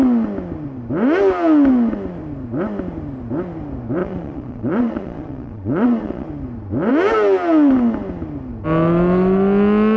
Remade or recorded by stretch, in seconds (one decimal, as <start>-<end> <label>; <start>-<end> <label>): 0.0-4.0 recorded; 4.0-6.3 remade; 6.3-10.0 recorded